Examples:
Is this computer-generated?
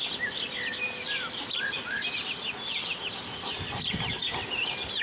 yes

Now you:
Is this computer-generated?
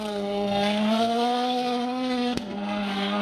yes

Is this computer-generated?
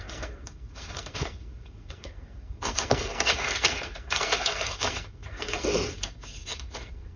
yes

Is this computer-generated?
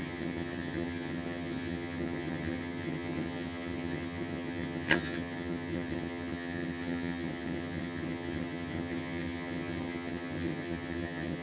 yes